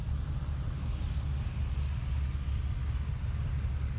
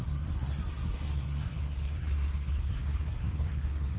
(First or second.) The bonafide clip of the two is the first